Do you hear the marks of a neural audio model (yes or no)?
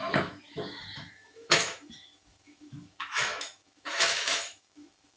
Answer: yes